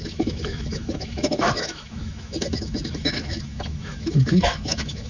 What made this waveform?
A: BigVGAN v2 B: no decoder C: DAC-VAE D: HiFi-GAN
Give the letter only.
C